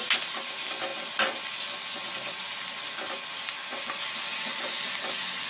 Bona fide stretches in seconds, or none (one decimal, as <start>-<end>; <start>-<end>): 0.0-5.5